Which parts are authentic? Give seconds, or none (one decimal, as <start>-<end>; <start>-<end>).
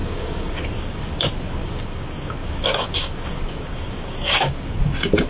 1.0-1.6; 4.8-5.3